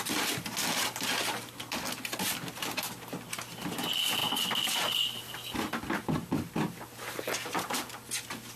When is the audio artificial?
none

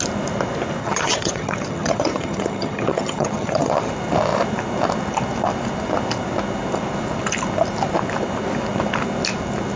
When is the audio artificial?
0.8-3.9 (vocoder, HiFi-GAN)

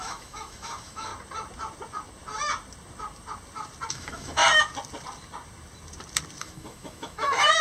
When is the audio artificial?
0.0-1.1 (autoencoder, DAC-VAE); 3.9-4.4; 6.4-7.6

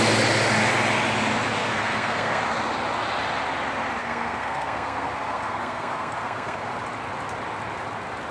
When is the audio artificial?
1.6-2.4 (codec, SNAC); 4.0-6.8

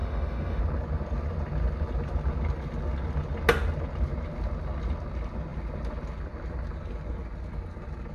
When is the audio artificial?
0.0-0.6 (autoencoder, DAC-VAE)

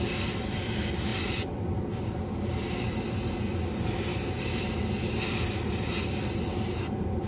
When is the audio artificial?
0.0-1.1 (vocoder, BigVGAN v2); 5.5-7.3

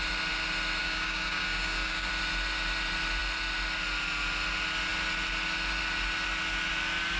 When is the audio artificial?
0.8-2.1 (codec, DAC)